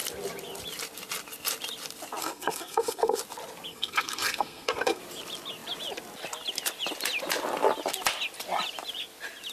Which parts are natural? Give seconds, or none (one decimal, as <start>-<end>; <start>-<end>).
0.0-2.2; 3.2-3.7; 5.0-9.5